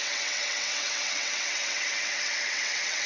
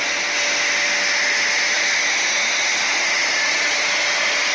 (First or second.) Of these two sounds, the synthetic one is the first